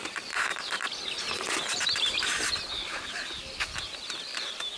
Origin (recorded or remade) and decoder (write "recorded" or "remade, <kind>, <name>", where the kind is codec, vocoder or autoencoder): recorded